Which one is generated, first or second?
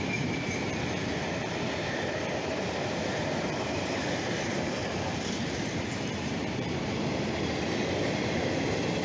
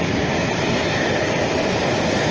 first